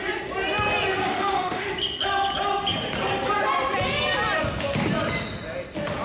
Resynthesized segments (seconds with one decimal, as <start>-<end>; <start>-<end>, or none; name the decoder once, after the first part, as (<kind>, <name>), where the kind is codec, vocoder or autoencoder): 1.1-1.7 (autoencoder, DAC-VAE)

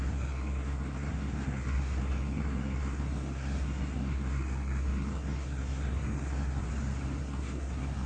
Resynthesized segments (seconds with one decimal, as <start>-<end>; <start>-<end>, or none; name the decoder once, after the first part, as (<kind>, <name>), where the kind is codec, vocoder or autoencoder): 0.0-6.7 (codec, SNAC); 7.2-8.1

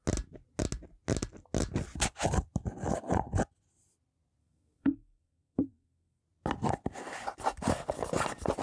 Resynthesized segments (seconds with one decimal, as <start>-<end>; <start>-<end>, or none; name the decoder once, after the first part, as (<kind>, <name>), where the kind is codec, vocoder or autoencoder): 4.4-6.2 (codec, SNAC)